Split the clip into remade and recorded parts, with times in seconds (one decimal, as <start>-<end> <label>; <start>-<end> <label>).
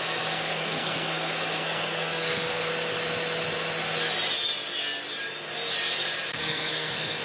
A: 0.0-2.7 remade; 2.7-6.3 recorded; 6.3-7.2 remade